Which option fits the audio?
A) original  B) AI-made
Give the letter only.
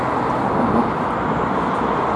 A